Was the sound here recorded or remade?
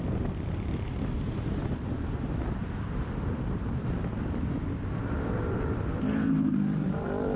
remade